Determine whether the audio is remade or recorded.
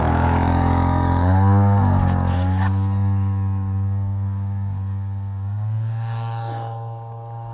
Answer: remade